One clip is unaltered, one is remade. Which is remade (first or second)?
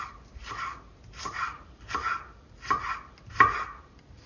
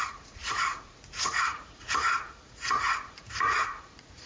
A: second